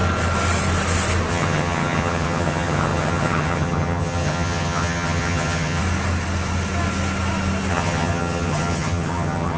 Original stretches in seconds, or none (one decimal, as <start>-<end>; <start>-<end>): 0.0-1.3; 5.8-7.7

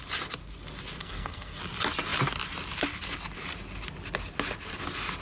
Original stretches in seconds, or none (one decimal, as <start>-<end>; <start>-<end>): 0.0-1.0; 1.6-5.2

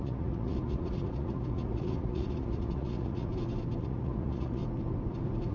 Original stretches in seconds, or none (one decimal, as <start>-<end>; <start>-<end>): 3.3-3.8; 4.6-5.5

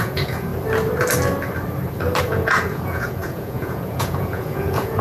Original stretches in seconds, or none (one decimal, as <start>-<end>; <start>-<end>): 0.5-2.2